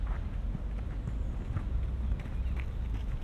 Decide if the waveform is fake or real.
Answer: real